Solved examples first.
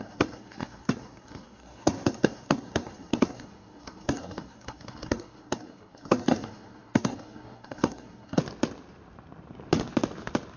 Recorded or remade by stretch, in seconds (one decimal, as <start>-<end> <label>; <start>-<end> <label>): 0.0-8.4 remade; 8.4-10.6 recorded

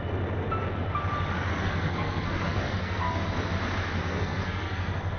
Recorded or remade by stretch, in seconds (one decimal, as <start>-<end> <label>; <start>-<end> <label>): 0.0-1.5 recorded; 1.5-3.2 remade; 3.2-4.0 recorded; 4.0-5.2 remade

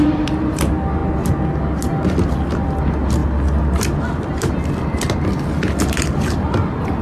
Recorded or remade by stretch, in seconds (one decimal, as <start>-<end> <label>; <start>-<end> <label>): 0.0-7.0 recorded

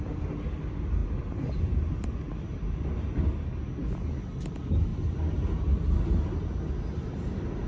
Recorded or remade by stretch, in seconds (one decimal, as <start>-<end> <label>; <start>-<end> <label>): 0.0-7.7 recorded

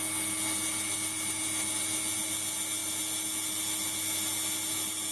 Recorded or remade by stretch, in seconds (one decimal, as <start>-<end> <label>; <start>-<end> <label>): 0.0-5.1 recorded